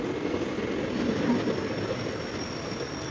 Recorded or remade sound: recorded